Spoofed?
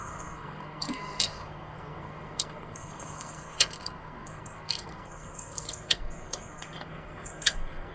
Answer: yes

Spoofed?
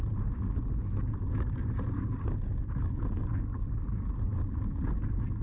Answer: no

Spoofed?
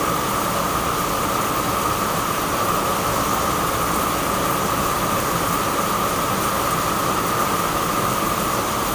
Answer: no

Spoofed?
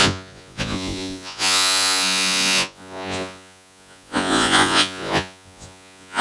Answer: yes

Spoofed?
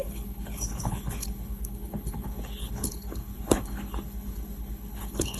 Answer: yes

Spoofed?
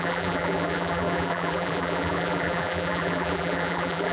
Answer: yes